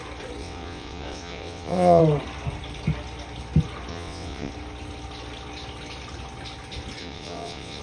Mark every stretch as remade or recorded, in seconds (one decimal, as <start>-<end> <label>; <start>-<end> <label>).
0.0-0.4 recorded; 0.4-2.0 remade; 2.0-3.9 recorded; 3.9-4.5 remade; 4.5-7.0 recorded; 7.0-7.8 remade